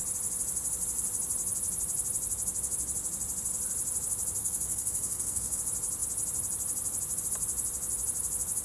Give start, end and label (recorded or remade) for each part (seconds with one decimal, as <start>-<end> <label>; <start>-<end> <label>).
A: 0.0-4.4 recorded; 4.4-5.6 remade; 5.6-8.6 recorded